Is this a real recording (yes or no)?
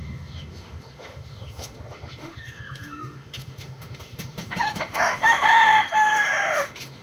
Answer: no